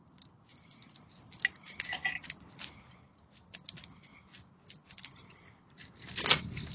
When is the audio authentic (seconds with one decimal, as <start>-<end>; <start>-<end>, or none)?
0.0-6.7